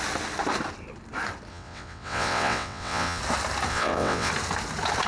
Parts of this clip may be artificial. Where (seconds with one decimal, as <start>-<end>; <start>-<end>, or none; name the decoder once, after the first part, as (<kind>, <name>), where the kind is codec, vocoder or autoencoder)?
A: 1.5-3.2 (vocoder, WaveNeXt); 3.7-4.3